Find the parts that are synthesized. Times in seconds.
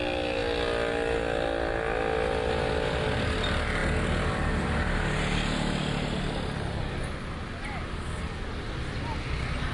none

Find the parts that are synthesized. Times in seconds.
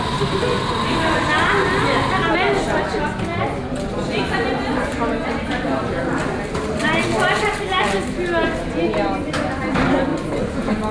none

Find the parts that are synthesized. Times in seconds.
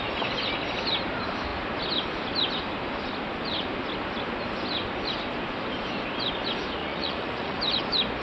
6.8-7.6 (vocoder, Vocos)